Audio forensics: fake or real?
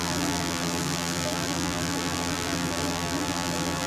fake